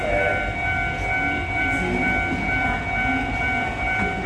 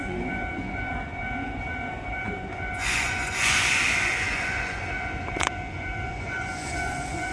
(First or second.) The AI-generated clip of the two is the second